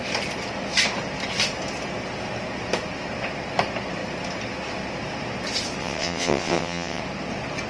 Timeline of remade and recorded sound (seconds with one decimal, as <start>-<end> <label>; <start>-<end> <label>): 0.0-5.8 recorded; 5.8-7.0 remade; 7.0-7.7 recorded

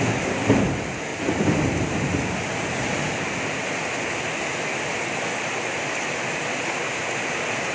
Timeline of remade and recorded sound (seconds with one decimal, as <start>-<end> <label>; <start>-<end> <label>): 0.0-7.7 recorded

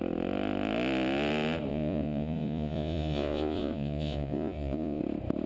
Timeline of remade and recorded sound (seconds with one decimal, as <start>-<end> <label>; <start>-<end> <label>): 0.0-1.7 recorded; 1.7-5.0 remade; 5.0-5.5 recorded

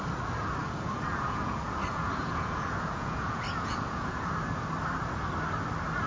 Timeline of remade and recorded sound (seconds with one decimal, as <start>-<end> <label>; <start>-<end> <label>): 0.0-0.6 recorded; 0.6-4.3 remade; 4.3-6.1 recorded

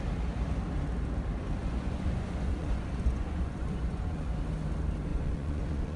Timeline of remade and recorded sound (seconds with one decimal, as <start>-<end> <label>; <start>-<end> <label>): 0.0-1.6 recorded; 1.6-4.4 remade; 4.4-5.1 recorded; 5.1-6.0 remade

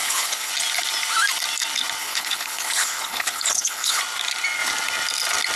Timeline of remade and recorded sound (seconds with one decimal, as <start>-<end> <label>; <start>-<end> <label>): 0.0-0.5 remade; 0.5-2.0 recorded; 2.0-4.0 remade; 4.0-5.6 recorded

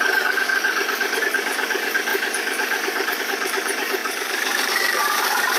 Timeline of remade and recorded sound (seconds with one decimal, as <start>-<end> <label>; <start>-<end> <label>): 0.0-5.6 remade